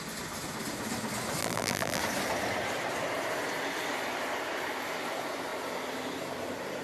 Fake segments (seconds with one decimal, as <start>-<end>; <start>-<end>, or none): 1.4-2.0